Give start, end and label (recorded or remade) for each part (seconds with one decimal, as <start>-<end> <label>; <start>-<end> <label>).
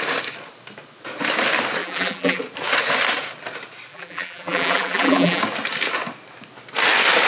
0.0-1.8 recorded; 1.8-2.4 remade; 2.4-3.9 recorded; 3.9-5.4 remade; 5.4-7.3 recorded